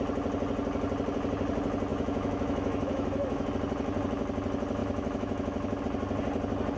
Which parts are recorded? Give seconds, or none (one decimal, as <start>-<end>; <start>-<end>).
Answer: 0.0-1.9; 3.5-4.8; 5.8-6.8

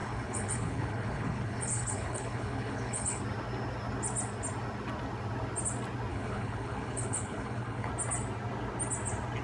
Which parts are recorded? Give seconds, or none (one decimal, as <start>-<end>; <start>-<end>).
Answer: 3.2-6.1; 7.9-9.4

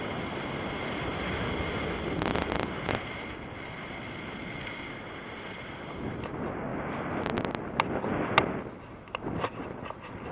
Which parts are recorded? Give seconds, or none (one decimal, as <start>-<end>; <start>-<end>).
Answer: 0.0-10.3

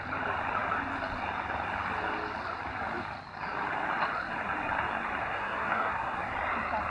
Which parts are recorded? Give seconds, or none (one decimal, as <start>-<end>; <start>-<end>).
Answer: 0.0-5.2; 6.3-6.9

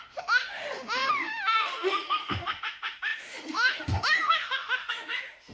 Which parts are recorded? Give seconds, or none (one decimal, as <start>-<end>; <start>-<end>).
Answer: none

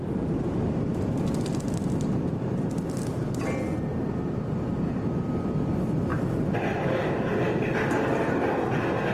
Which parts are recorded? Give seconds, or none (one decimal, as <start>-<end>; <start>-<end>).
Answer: 0.0-3.9; 5.0-6.1; 8.2-9.1

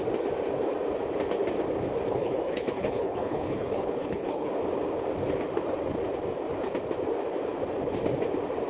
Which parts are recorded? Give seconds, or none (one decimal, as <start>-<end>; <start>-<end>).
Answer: 0.0-2.1; 4.5-8.7

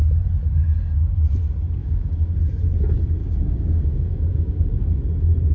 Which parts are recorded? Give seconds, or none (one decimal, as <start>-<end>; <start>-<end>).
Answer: 0.0-1.8; 2.3-3.2; 5.0-5.5